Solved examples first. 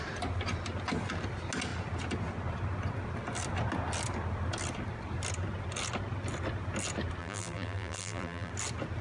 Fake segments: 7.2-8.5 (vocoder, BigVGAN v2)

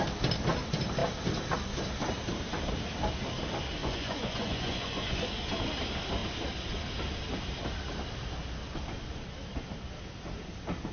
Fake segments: 3.8-5.2 (vocoder, Vocos)

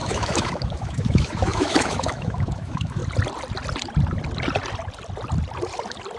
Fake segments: 0.0-3.0 (autoencoder, DAC-VAE)

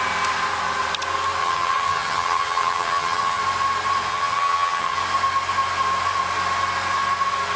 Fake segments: 1.4-3.4 (vocoder, HiFi-GAN); 4.1-5.0

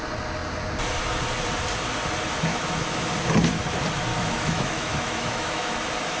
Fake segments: 2.5-3.1 (autoencoder, DAC-VAE); 4.1-5.7